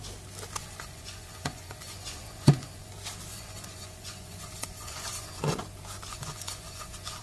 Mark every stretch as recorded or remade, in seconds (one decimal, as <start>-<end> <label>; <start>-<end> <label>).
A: 0.0-0.6 recorded; 0.6-2.9 remade; 2.9-3.3 recorded; 3.3-5.4 remade; 5.4-6.1 recorded; 6.1-7.2 remade